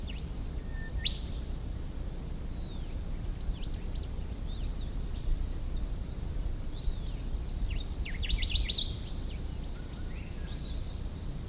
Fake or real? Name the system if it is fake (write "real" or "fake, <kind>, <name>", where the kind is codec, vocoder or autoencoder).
fake, vocoder, BigVGAN v2